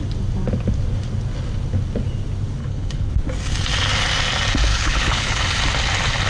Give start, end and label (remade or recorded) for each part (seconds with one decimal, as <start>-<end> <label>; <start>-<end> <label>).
0.0-2.6 recorded; 2.6-3.1 remade; 3.1-4.7 recorded; 4.7-5.4 remade; 5.4-6.3 recorded